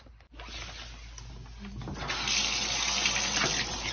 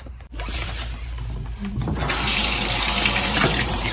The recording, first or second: first